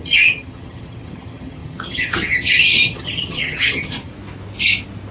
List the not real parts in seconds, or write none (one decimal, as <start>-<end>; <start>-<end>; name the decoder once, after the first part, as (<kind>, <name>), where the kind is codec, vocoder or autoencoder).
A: 0.0-4.1 (vocoder, HiFi-GAN)